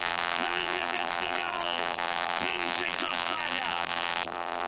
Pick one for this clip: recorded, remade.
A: remade